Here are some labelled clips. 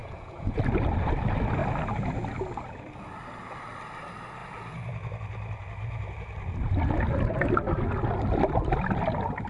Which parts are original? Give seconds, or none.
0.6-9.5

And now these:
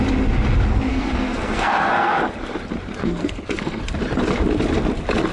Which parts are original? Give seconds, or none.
0.0-0.9; 2.2-3.0; 3.8-5.3